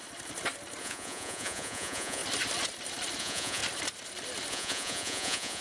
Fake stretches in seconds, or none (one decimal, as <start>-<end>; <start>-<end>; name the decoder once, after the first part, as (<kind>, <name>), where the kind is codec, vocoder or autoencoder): 0.8-2.2 (vocoder, Vocos); 3.2-3.6; 4.5-5.6